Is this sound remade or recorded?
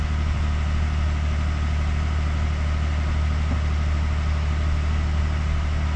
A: recorded